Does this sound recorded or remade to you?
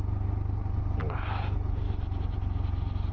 recorded